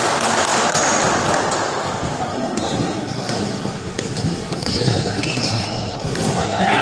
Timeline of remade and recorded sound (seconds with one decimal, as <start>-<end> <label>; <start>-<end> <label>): 0.0-2.3 recorded; 2.3-6.8 remade